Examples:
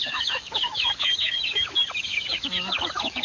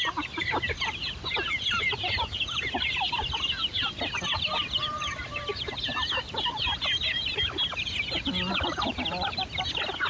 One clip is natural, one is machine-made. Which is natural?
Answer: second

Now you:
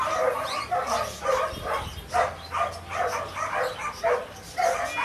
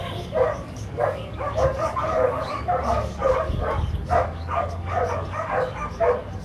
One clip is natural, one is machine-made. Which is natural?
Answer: first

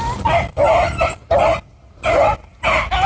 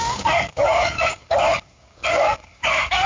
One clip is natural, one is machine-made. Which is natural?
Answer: first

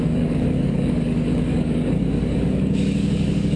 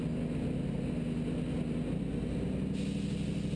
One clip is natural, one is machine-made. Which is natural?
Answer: second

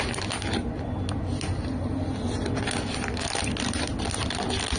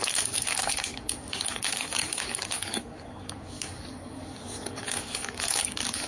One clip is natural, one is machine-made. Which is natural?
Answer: first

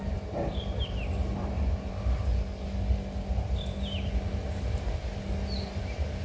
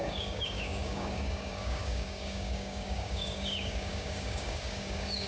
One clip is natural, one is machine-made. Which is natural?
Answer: first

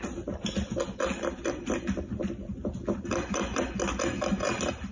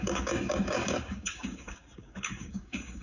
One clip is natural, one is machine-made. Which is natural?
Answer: first